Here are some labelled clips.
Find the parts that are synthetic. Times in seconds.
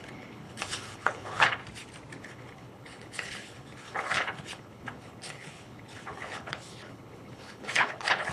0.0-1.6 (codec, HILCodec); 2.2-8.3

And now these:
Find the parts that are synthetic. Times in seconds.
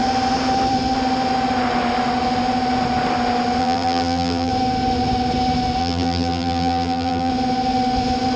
3.6-4.5 (vocoder, BigVGAN v2); 5.8-7.3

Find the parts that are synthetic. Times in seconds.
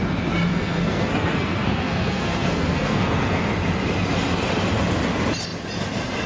0.5-3.5 (codec, SNAC)